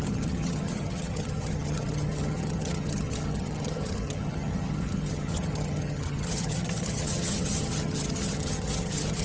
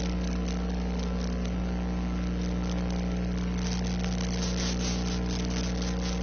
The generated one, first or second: first